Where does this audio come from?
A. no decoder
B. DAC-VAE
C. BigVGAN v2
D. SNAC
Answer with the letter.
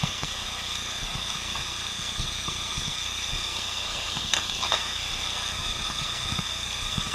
D